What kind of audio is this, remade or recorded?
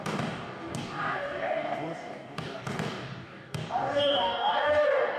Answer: remade